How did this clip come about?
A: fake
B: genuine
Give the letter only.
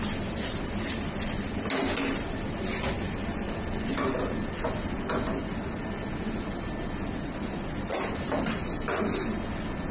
B